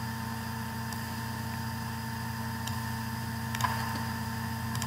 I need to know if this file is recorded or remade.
recorded